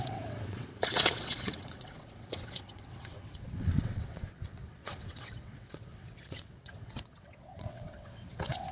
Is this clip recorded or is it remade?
remade